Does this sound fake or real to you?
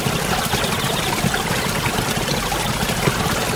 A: real